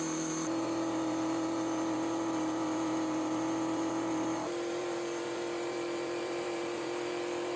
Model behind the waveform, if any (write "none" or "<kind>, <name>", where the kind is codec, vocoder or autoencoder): vocoder, BigVGAN v2